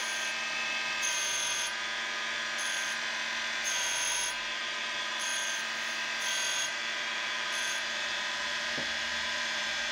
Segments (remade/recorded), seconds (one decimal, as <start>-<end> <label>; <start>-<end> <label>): 0.0-4.5 recorded; 4.5-5.3 remade; 5.3-6.6 recorded; 6.6-9.9 remade